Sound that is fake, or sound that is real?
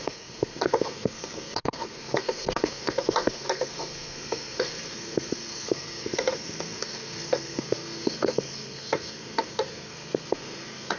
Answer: fake